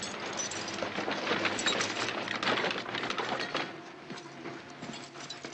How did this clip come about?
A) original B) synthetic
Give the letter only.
A